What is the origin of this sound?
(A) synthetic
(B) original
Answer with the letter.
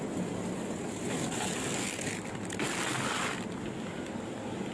B